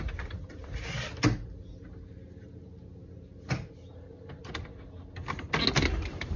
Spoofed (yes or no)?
no